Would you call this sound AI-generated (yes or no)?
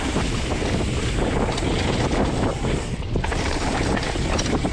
no